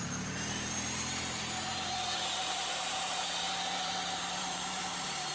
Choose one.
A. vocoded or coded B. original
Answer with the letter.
A